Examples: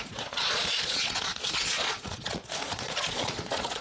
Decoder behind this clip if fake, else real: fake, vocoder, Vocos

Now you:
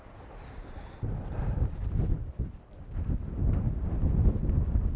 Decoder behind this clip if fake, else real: real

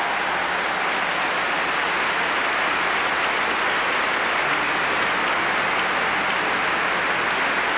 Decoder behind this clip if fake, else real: real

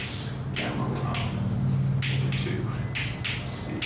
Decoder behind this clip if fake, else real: real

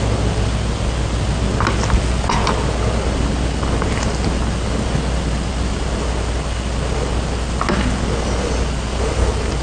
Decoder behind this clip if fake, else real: real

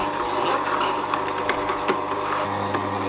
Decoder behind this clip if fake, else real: real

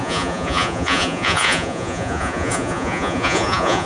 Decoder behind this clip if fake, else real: fake, vocoder, Vocos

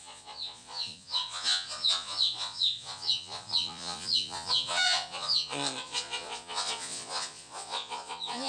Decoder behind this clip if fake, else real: fake, vocoder, Vocos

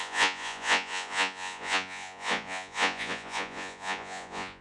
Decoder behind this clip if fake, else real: fake, vocoder, Vocos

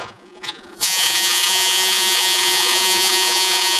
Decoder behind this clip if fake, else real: fake, vocoder, Vocos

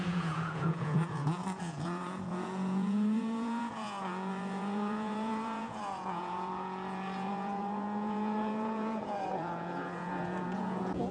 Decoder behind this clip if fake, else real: fake, vocoder, Vocos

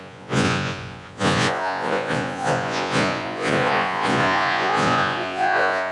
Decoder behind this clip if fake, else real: fake, vocoder, Vocos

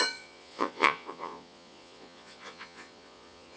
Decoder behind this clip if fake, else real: fake, vocoder, Vocos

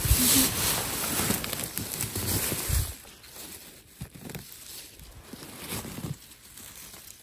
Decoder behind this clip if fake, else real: real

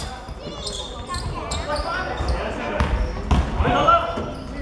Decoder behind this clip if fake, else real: real